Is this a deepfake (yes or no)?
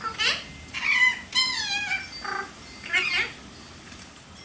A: no